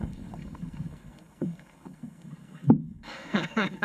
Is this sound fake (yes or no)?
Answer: yes